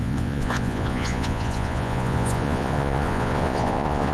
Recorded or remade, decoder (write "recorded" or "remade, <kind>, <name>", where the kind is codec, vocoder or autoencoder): remade, vocoder, Vocos